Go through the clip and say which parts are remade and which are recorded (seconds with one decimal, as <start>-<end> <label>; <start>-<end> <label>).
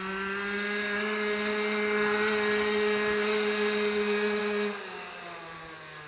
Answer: 0.0-6.1 recorded